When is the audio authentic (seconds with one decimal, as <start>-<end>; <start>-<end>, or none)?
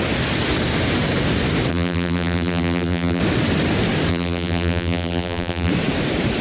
0.0-1.7; 3.2-4.1; 5.7-6.4